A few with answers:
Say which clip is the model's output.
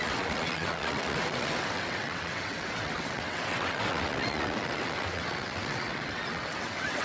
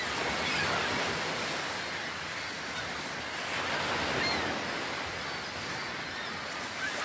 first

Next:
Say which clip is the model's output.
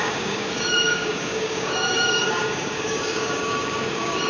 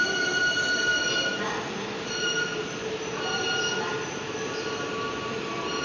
first